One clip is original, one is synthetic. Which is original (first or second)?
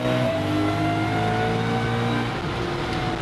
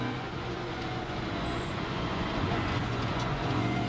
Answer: first